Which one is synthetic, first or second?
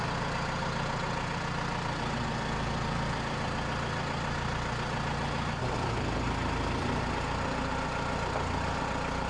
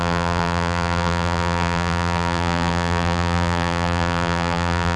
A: second